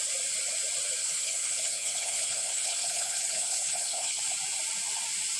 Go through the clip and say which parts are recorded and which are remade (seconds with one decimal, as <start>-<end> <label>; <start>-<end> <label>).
0.0-1.0 recorded; 1.0-4.2 remade; 4.2-5.4 recorded